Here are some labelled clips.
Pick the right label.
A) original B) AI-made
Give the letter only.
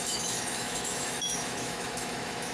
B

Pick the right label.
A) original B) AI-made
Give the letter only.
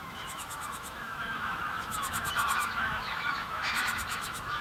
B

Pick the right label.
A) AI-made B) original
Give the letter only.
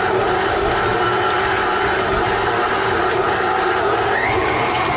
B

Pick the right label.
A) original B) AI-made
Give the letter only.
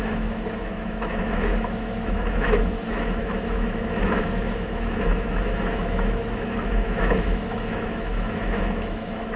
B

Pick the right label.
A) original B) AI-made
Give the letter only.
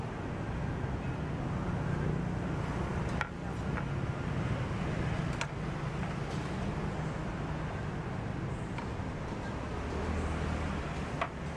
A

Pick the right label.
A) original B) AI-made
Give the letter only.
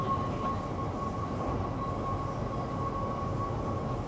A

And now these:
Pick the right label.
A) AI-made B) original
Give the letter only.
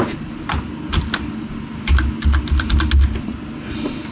B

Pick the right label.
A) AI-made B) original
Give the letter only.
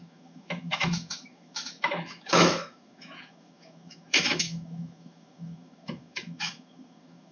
A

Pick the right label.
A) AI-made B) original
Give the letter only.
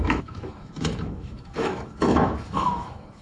A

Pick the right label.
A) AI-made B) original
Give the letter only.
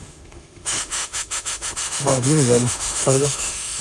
A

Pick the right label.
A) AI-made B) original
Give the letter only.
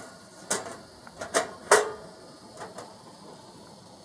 B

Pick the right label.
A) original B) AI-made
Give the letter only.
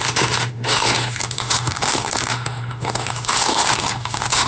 B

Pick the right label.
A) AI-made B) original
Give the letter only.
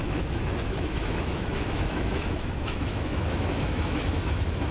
A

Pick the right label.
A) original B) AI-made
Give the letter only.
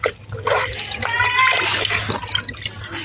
A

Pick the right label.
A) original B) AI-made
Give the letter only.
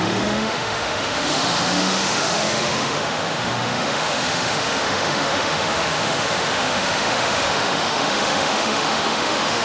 B